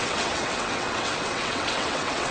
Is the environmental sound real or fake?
fake